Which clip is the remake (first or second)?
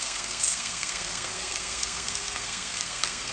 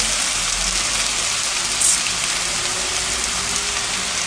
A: first